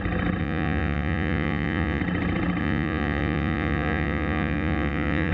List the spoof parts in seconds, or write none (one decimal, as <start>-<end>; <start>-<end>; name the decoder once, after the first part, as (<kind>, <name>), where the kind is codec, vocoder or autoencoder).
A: 0.4-2.0 (vocoder, Vocos); 2.6-5.3